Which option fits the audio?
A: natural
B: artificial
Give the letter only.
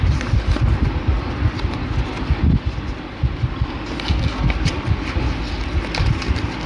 A